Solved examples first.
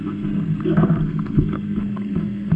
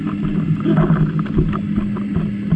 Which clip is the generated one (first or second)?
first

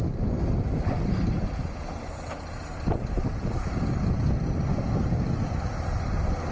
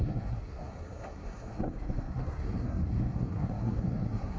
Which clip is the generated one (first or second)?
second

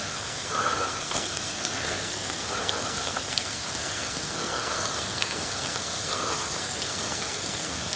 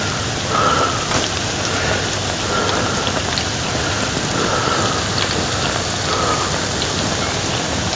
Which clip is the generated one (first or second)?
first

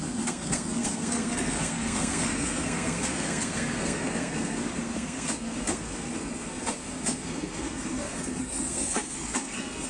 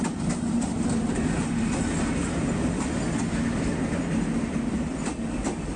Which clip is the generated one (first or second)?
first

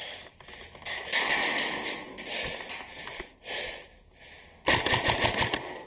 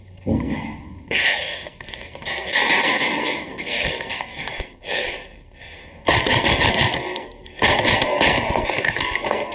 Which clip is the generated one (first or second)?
second